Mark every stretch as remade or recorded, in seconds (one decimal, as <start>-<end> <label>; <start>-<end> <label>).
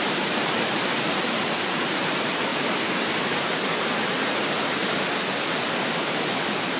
0.0-4.8 remade; 4.8-5.8 recorded; 5.8-6.8 remade